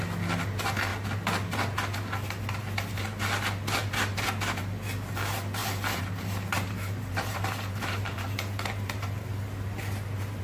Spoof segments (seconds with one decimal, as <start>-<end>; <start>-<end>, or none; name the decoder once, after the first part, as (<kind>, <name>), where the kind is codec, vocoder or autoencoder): 5.6-10.4 (vocoder, BigVGAN v2)